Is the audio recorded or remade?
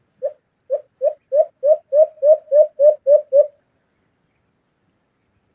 recorded